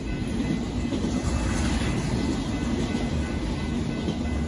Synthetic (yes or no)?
no